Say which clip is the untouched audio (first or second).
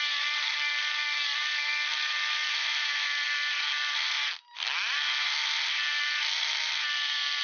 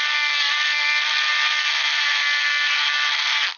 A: second